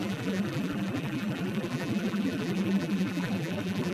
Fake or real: fake